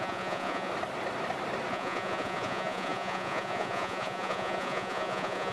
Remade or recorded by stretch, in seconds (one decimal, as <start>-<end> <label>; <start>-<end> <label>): 0.0-0.7 remade; 0.7-1.7 recorded; 1.7-5.5 remade